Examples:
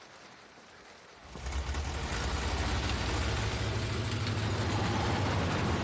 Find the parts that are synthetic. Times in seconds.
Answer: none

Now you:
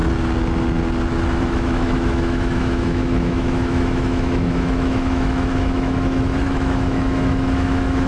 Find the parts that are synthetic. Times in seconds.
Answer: 1.4-8.1 (autoencoder, DAC-VAE)

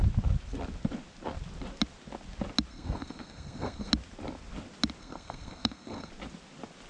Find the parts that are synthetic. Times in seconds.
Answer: 2.7-3.9 (codec, SNAC); 5.0-6.1

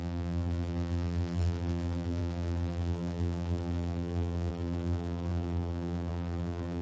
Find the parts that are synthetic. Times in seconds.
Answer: 0.0-6.8 (vocoder, BigVGAN v2)

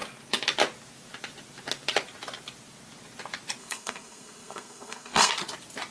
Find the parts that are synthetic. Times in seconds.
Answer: 3.6-5.3 (codec, SNAC)

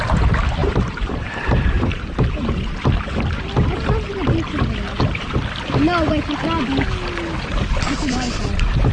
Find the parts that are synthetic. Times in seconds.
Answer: 0.6-2.8 (vocoder, BigVGAN v2)

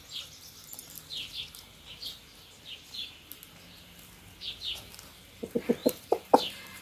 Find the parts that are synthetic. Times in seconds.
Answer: 5.8-6.8 (vocoder, BigVGAN v2)